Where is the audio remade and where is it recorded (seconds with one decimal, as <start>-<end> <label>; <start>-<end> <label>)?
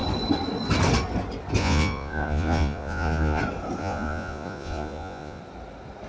0.0-1.6 recorded; 1.6-3.4 remade; 3.4-3.8 recorded; 3.8-5.4 remade; 5.4-6.1 recorded